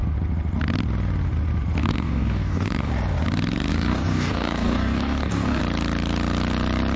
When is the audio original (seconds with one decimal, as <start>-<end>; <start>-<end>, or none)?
0.0-1.8; 2.9-3.7; 5.6-7.0